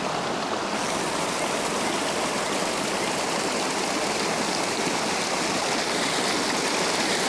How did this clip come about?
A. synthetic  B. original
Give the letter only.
B